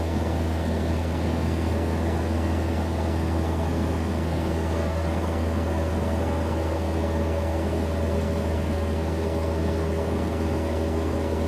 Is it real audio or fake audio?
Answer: fake